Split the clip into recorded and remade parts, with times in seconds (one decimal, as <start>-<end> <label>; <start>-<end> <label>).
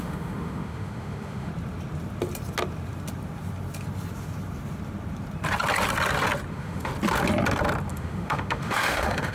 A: 0.0-1.5 remade; 1.5-6.5 recorded; 6.5-6.9 remade; 6.9-7.9 recorded; 7.9-9.3 remade